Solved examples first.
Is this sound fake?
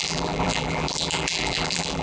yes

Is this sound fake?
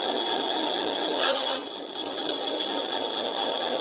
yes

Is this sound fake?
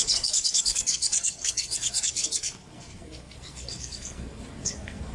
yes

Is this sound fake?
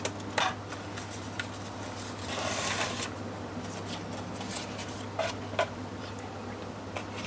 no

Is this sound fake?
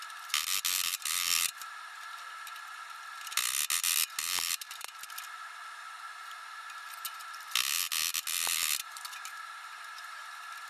no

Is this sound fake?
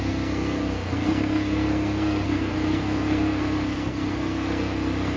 yes